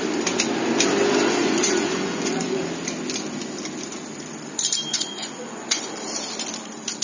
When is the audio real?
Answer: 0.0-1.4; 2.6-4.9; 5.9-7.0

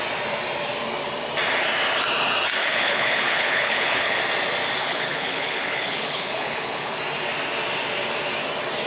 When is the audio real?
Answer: 0.0-2.6; 4.2-4.8; 7.0-8.9

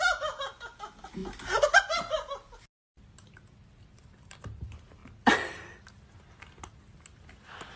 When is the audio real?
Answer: 0.0-7.8

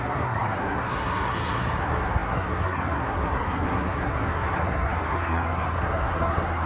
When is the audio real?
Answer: none

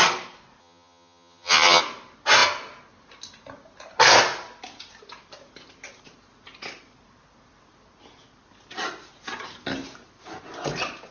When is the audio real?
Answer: 0.0-0.6; 1.8-11.1

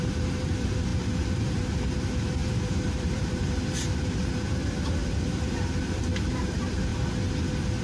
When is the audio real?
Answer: 6.9-7.8

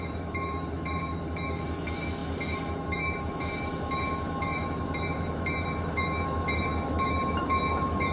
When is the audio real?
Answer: none

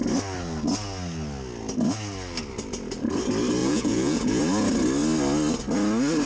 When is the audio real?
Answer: 0.0-3.6; 4.4-6.3